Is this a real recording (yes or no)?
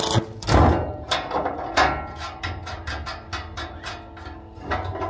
yes